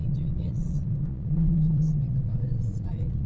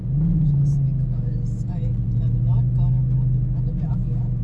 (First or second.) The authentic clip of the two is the second